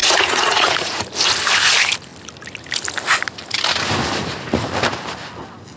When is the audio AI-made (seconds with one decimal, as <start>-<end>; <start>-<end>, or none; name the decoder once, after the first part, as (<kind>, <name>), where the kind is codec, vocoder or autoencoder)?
0.0-1.0 (vocoder, Vocos)